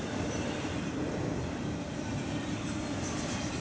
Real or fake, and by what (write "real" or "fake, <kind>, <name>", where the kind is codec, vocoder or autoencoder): real